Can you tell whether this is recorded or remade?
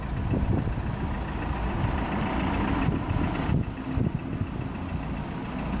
recorded